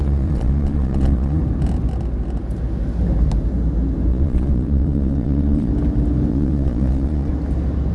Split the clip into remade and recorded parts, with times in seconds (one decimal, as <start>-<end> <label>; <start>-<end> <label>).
0.0-1.4 remade; 1.4-4.1 recorded; 4.1-5.7 remade; 5.7-6.3 recorded; 6.3-7.3 remade; 7.3-7.9 recorded

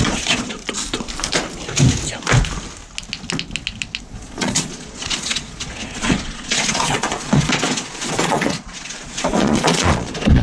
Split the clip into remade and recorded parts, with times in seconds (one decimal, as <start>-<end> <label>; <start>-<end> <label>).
0.0-0.6 remade; 0.6-4.0 recorded; 4.0-10.4 remade

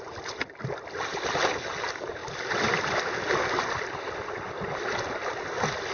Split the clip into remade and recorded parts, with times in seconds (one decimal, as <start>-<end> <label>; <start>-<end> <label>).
0.0-5.9 recorded